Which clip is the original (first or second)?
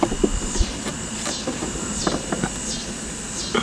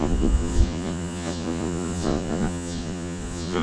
first